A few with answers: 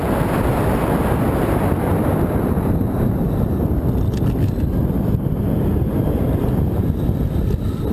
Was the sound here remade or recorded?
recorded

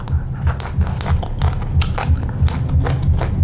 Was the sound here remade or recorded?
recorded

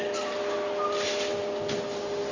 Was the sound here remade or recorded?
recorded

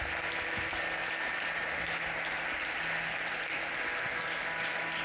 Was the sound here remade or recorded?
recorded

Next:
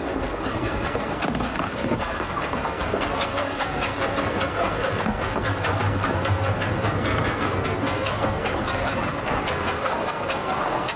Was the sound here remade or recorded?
remade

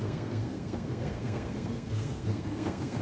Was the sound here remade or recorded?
remade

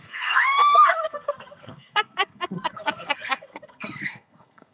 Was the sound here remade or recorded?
remade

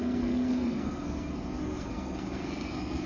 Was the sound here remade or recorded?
remade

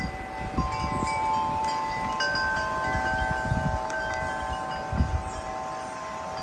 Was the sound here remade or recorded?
recorded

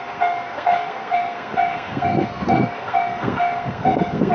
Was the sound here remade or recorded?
remade